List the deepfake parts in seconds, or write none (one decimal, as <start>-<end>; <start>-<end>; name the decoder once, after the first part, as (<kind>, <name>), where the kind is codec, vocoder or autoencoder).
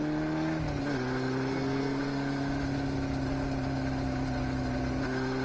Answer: 1.5-2.0 (codec, SNAC)